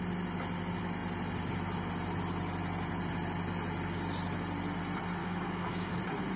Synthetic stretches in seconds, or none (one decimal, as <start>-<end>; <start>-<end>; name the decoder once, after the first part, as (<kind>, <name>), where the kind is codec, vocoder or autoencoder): 5.2-6.0 (autoencoder, DAC-VAE)